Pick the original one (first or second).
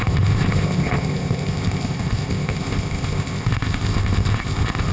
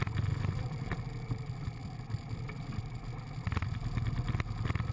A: second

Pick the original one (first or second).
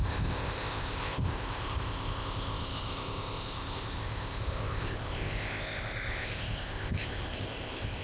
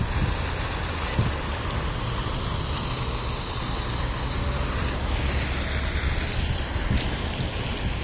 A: second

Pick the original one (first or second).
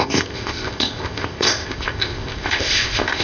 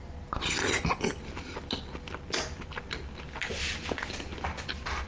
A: second